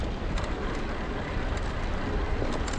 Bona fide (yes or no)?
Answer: yes